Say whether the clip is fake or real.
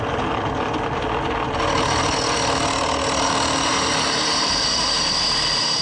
real